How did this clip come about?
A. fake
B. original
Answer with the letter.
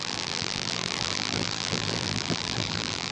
A